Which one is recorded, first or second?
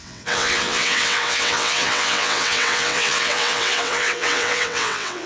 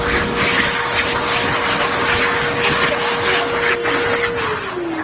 second